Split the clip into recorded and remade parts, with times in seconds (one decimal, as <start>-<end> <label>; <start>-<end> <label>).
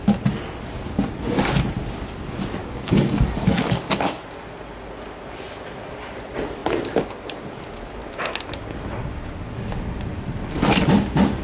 0.0-2.6 recorded; 2.6-4.2 remade; 4.2-11.4 recorded